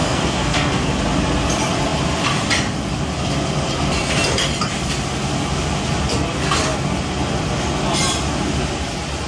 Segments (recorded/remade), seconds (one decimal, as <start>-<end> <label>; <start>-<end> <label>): 0.0-0.9 remade; 0.9-9.3 recorded